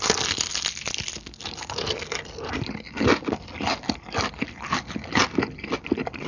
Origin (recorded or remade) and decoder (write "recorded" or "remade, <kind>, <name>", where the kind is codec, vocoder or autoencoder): recorded